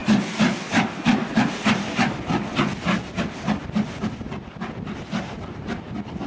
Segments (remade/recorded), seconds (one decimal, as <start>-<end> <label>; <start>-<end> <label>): 0.0-6.3 recorded